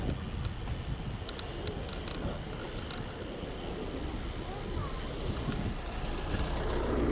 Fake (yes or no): no